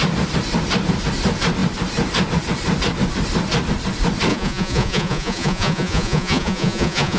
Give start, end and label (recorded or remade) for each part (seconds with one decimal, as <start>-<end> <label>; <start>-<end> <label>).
0.0-4.3 recorded; 4.3-7.2 remade